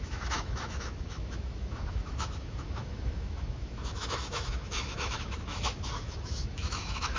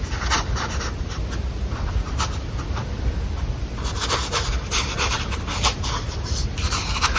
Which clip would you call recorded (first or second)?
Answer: second